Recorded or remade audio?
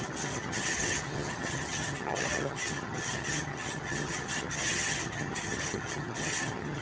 remade